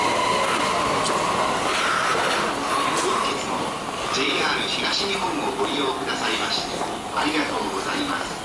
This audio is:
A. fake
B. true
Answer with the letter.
B